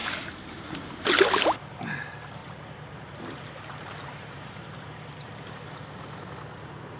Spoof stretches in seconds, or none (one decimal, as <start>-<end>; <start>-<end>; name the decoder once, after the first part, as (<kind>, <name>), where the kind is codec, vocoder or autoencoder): 0.0-0.7 (vocoder, BigVGAN v2); 2.4-5.8